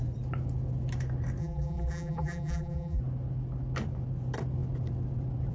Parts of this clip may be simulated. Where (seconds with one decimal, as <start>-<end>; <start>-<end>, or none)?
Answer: 1.4-3.0